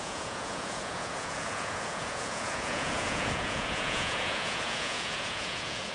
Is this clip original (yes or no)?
no